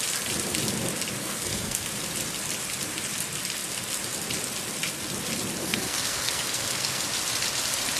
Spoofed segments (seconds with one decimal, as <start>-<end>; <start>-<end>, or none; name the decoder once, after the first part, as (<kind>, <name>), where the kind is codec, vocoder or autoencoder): 1.2-1.8 (codec, SNAC); 5.6-7.0